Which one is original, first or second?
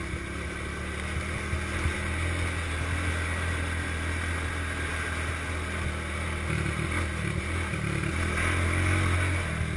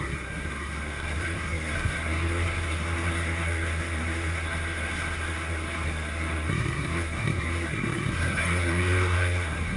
first